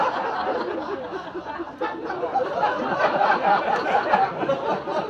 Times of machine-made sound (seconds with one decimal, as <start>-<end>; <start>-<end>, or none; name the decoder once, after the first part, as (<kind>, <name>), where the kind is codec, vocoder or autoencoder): none